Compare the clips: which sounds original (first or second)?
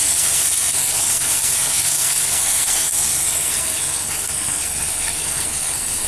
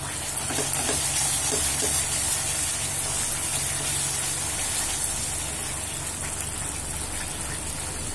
second